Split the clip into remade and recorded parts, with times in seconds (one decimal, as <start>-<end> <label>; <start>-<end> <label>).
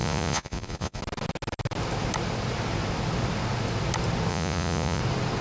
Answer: 0.0-1.0 remade; 1.0-4.3 recorded; 4.3-5.0 remade; 5.0-5.4 recorded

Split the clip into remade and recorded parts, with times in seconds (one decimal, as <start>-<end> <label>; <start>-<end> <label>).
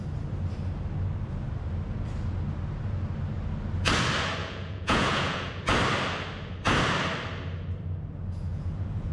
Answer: 0.0-4.4 recorded; 4.4-5.5 remade; 5.5-8.5 recorded; 8.5-9.1 remade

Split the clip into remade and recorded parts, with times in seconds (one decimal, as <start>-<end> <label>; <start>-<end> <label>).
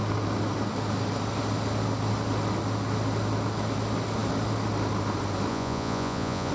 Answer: 0.0-5.5 recorded; 5.5-6.5 remade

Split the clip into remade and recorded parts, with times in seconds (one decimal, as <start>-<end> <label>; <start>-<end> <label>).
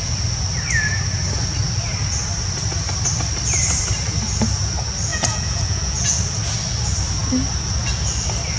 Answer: 0.0-5.1 recorded; 5.1-6.2 remade; 6.2-8.6 recorded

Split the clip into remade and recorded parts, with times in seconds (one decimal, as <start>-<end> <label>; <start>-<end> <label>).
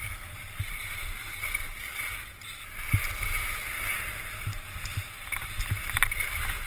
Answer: 0.0-6.7 recorded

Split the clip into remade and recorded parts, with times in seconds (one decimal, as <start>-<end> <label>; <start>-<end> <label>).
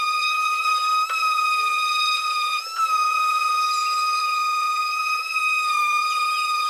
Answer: 0.0-0.7 remade; 0.7-1.2 recorded; 1.2-6.7 remade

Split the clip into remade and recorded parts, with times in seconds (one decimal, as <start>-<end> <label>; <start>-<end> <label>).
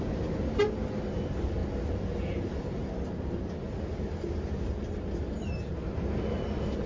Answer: 0.0-6.9 recorded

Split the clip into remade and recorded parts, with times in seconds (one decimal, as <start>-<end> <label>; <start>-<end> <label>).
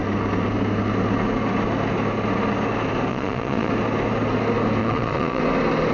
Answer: 0.0-3.1 recorded; 3.1-3.7 remade; 3.7-4.8 recorded; 4.8-5.4 remade; 5.4-5.9 recorded